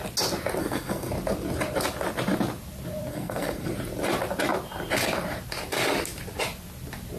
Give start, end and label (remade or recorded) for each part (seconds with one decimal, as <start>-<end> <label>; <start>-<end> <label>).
0.0-0.6 recorded; 0.6-1.1 remade; 1.1-3.1 recorded; 3.1-3.7 remade; 3.7-7.2 recorded